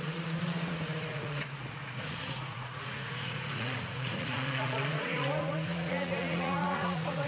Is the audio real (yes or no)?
no